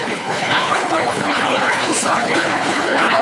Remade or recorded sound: remade